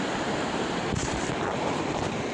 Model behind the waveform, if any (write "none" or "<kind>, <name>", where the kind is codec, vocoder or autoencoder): vocoder, BigVGAN v2